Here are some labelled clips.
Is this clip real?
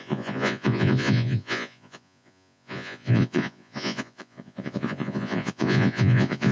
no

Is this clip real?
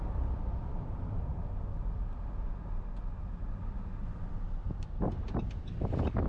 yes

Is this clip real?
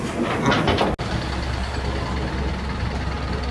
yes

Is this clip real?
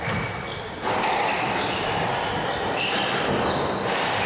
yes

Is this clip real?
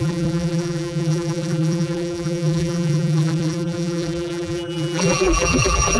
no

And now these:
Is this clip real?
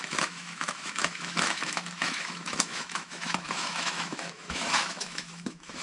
no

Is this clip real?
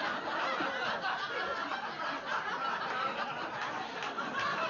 yes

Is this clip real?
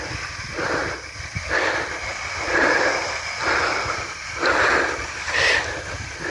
no